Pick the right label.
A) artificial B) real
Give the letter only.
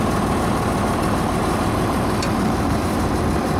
B